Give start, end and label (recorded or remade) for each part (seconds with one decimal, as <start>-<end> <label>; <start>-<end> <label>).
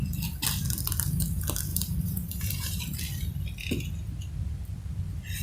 0.0-1.7 recorded; 1.7-2.8 remade; 2.8-5.4 recorded